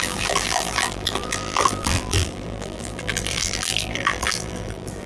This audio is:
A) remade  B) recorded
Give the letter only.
A